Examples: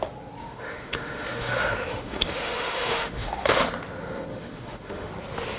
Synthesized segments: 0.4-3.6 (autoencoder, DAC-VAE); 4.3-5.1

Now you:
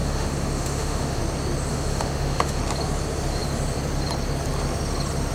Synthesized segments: 0.0-1.2 (autoencoder, DAC-VAE); 1.7-2.6